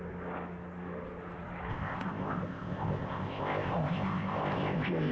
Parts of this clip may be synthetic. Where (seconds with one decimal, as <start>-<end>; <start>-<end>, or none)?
1.7-5.1